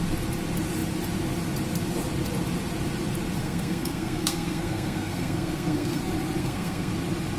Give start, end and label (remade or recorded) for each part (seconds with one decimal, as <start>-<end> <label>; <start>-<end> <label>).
0.0-3.4 recorded; 3.4-6.0 remade; 6.0-6.4 recorded; 6.4-6.9 remade; 6.9-7.4 recorded